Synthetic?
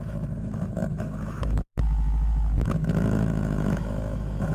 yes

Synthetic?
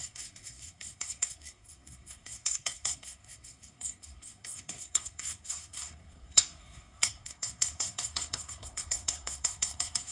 yes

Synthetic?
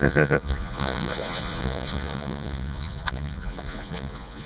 yes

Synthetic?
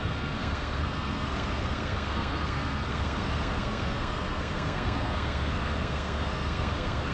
yes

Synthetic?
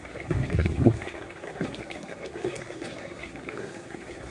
yes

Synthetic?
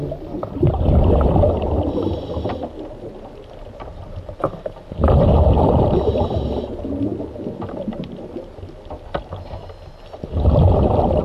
no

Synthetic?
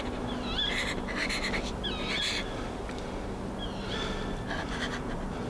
no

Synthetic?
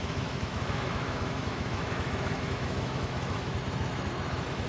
yes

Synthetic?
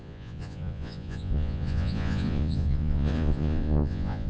yes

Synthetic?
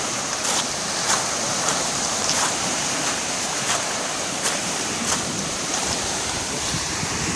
yes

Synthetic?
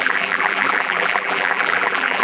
yes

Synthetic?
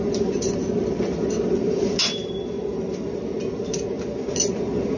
yes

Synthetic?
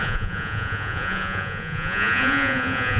yes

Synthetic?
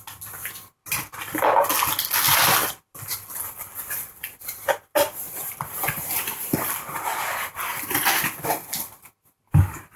no